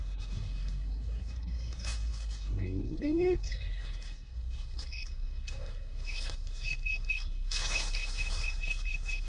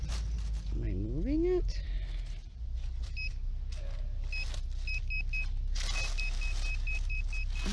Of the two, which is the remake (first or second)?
first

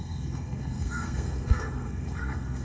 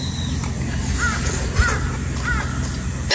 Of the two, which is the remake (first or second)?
first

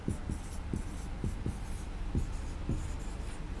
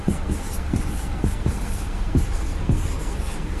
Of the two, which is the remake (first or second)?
second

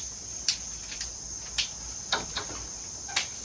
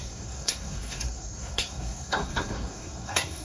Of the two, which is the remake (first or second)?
second